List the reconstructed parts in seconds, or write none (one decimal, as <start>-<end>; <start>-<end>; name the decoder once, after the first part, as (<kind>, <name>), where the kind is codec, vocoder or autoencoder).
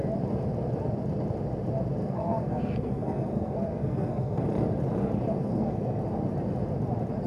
2.0-4.4 (codec, SNAC); 5.4-6.0